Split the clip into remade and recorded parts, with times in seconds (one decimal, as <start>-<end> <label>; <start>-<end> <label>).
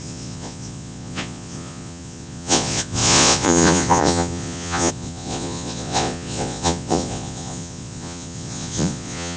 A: 0.0-9.4 remade